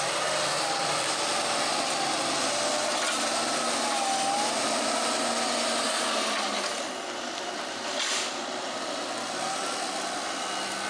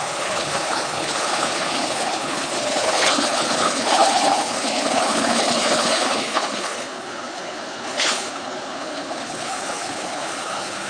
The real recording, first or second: first